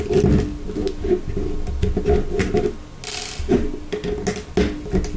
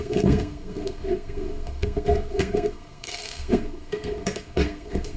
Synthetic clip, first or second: second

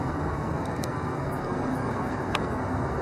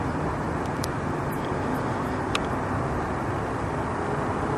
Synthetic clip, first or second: first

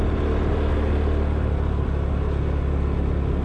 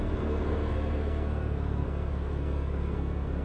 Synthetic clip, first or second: second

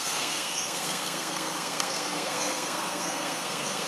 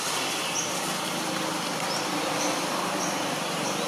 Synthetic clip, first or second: first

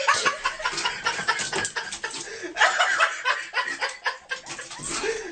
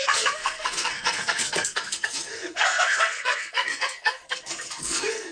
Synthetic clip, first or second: second